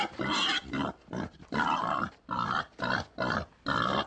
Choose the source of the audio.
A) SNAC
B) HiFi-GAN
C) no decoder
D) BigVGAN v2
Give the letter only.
C